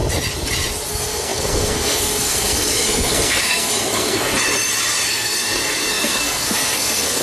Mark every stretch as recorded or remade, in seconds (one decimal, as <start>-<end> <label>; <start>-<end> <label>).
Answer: 0.0-0.9 recorded; 0.9-4.3 remade; 4.3-5.1 recorded; 5.1-7.2 remade

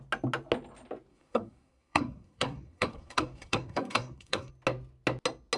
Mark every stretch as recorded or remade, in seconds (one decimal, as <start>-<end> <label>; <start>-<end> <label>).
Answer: 0.0-1.1 recorded; 1.1-4.5 remade; 4.5-5.6 recorded